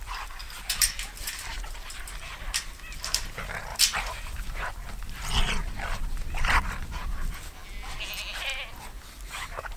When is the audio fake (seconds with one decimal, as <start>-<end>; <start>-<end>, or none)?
0.0-3.7; 5.4-7.6; 8.8-9.8